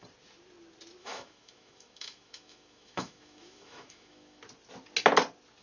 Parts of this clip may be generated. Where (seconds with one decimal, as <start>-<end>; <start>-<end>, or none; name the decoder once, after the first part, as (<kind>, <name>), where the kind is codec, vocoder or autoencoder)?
1.0-4.4 (autoencoder, DAC-VAE)